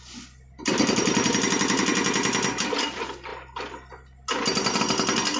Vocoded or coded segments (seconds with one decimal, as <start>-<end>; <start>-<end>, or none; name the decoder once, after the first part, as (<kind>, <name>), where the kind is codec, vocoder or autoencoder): none